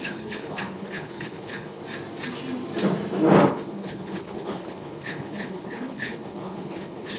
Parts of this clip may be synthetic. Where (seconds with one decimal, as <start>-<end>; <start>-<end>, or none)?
0.0-1.8; 3.5-7.2